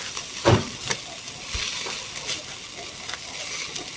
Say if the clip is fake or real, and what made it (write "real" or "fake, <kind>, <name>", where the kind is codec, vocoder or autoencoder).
real